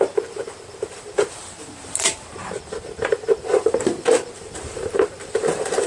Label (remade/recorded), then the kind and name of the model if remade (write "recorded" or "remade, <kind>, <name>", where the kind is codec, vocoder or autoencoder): remade, vocoder, BigVGAN v2